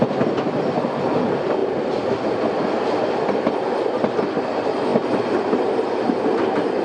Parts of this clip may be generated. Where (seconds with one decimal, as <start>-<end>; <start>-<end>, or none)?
none